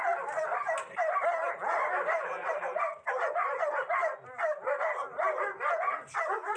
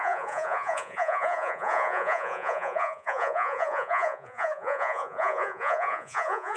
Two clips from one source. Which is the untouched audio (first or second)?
first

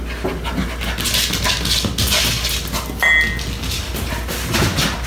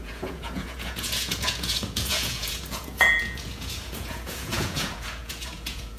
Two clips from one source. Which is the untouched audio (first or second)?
first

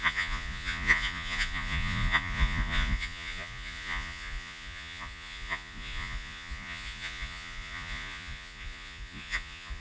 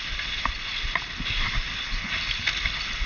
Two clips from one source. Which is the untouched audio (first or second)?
second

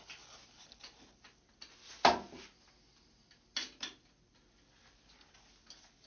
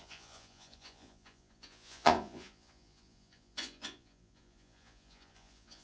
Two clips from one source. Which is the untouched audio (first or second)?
first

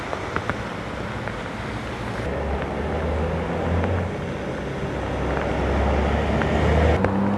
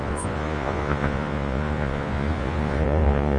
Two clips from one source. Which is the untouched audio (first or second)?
first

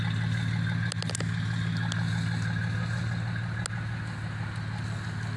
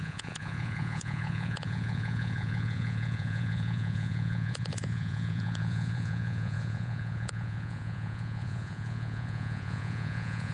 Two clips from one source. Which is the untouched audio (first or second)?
first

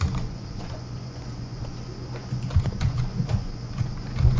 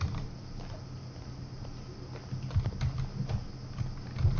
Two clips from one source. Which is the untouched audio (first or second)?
second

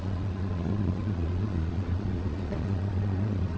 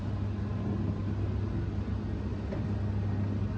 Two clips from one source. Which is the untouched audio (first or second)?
second